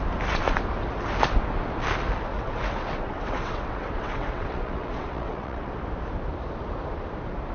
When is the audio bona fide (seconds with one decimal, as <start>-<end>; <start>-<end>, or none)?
0.0-2.3; 5.7-7.5